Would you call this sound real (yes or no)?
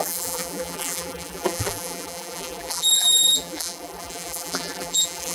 no